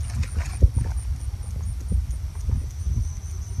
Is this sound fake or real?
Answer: real